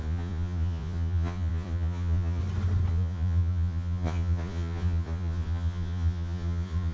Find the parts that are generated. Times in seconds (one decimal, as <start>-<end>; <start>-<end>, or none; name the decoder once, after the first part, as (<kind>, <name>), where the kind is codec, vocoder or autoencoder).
0.0-2.4 (vocoder, Vocos); 2.9-6.9

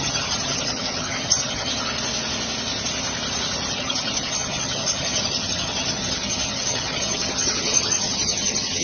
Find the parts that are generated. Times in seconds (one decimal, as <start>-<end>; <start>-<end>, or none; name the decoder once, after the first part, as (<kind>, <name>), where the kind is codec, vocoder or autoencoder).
0.0-1.7 (vocoder, HiFi-GAN); 3.7-8.8

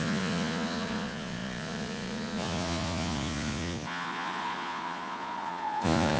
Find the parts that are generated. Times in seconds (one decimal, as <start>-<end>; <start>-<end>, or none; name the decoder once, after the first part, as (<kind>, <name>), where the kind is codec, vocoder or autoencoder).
0.0-6.2 (vocoder, Vocos)

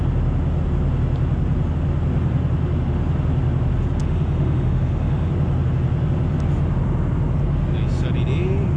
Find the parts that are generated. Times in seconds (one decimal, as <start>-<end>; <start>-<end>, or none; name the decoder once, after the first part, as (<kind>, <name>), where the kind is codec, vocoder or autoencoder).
4.0-5.3 (autoencoder, DAC-VAE)

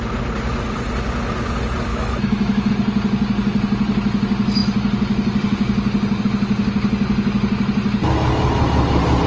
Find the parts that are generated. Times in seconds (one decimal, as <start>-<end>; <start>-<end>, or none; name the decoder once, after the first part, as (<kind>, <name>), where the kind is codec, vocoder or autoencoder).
1.9-2.7 (autoencoder, DAC-VAE)

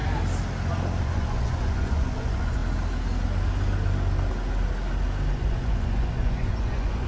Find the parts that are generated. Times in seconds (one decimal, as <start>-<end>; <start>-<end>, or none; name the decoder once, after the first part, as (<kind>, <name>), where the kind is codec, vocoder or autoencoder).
1.0-2.6 (vocoder, Vocos); 5.3-7.1